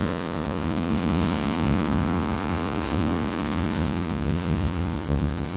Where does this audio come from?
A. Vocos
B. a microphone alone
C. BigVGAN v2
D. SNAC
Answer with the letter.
A